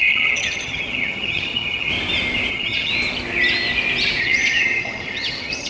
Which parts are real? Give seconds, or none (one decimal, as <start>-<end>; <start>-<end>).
1.9-2.5; 2.9-4.2